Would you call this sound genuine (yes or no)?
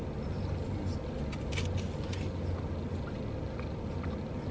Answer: yes